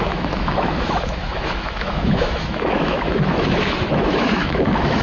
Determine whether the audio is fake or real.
fake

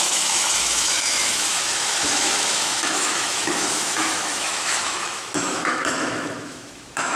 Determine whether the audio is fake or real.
fake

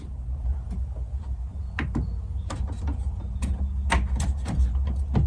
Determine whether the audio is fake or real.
real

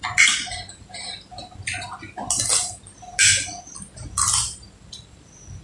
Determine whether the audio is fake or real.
real